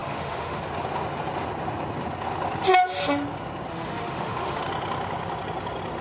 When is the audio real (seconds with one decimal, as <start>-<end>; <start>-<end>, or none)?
0.6-3.7; 4.6-6.0